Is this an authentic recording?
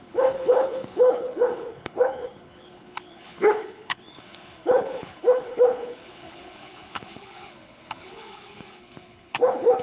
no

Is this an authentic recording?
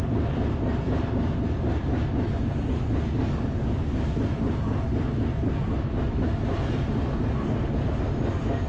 yes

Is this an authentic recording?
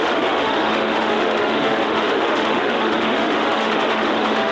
no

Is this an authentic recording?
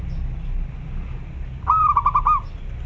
yes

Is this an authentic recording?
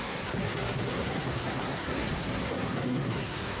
no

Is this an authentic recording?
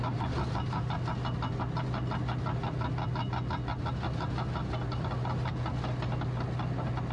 yes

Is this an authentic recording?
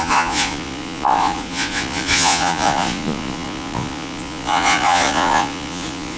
no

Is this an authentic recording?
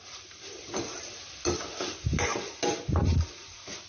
yes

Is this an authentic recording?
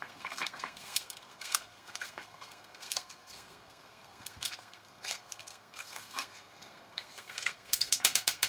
no